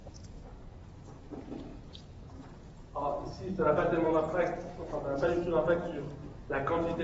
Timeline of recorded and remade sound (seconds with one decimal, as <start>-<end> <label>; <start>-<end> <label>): 0.0-0.5 remade; 0.5-1.7 recorded; 1.7-5.0 remade; 5.0-7.0 recorded